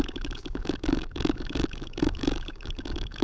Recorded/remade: remade